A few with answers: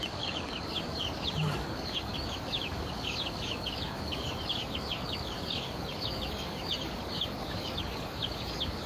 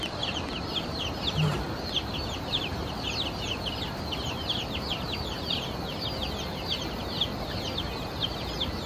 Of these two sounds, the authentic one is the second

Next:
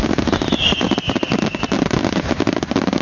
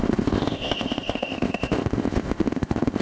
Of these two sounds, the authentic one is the first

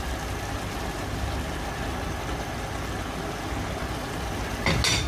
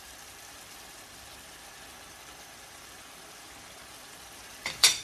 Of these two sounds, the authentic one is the first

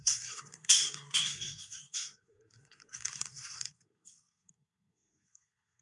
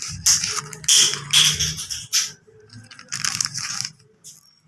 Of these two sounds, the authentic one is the second